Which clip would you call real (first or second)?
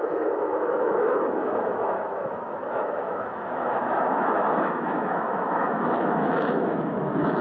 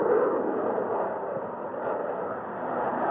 second